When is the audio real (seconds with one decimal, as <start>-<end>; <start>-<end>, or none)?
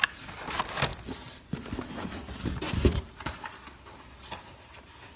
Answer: 0.0-5.2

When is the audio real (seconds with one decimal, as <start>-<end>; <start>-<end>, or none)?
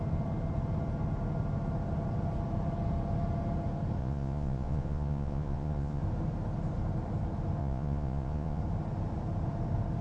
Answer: 0.0-4.0; 6.0-7.6; 8.6-10.0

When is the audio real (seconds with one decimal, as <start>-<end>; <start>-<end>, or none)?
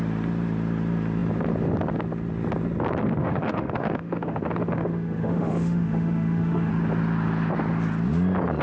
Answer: 0.0-3.2; 6.7-8.6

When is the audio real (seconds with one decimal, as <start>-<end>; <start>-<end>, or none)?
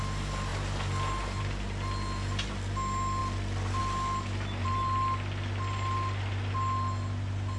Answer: 0.0-7.6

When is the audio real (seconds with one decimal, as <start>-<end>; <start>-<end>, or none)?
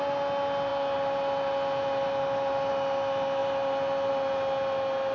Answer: 0.0-5.1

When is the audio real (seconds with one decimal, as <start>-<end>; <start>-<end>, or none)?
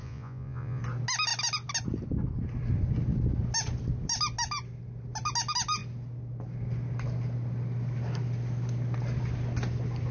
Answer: 0.8-10.1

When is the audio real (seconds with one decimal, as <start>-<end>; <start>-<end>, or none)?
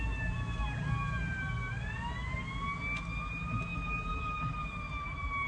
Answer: 0.0-3.7; 4.4-5.5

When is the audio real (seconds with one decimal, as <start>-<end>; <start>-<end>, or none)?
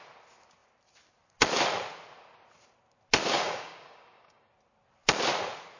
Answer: 0.0-3.2; 4.5-5.8